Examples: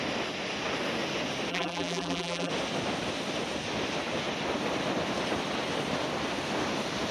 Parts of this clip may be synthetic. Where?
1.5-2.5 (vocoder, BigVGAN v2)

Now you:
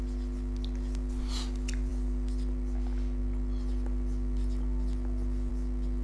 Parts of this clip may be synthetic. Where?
none

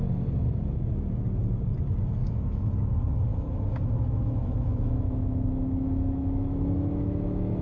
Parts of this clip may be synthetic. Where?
2.2-2.7 (autoencoder, DAC-VAE); 3.3-7.6

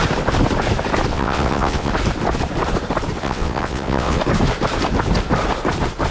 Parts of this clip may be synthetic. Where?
1.1-1.9 (vocoder, WaveNeXt); 3.2-4.2

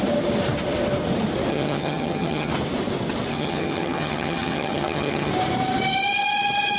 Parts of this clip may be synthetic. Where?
1.5-2.5 (vocoder, HiFi-GAN); 3.3-5.3

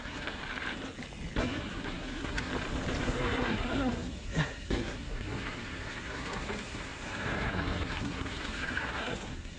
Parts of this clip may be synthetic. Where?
0.0-0.4 (codec, SNAC); 1.4-2.5; 3.0-9.6

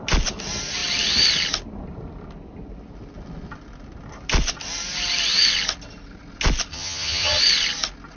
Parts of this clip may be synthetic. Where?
6.7-7.4 (vocoder, HiFi-GAN)

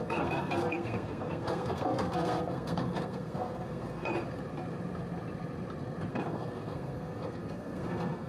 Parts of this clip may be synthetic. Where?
0.0-4.1 (codec, SNAC); 6.1-8.3